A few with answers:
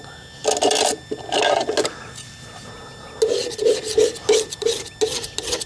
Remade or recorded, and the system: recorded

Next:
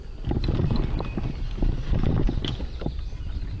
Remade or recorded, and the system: recorded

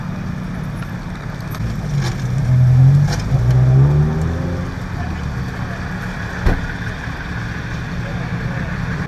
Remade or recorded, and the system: recorded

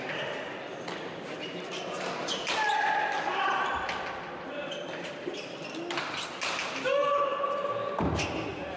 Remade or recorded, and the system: recorded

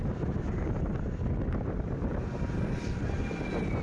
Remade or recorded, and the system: recorded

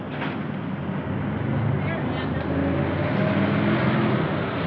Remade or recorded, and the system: recorded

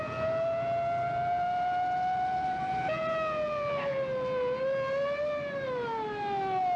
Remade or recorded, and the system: recorded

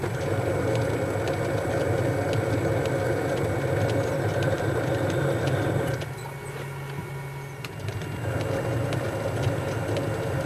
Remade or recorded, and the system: recorded